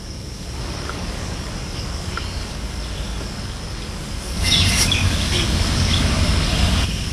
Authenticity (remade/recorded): remade